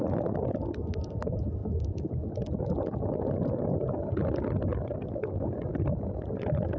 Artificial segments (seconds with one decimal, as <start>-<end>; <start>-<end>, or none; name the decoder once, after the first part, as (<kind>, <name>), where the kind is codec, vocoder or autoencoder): none